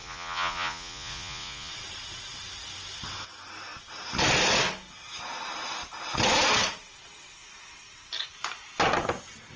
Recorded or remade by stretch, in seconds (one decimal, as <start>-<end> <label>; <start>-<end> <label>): 0.0-1.7 remade; 1.7-9.6 recorded